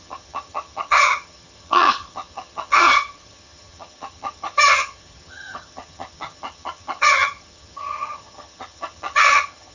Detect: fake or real fake